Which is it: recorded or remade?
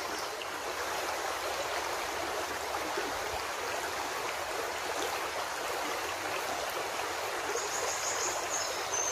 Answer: recorded